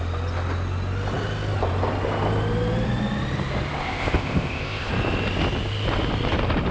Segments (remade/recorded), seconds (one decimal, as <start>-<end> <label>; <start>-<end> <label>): 0.0-3.8 recorded; 3.8-4.9 remade; 4.9-6.7 recorded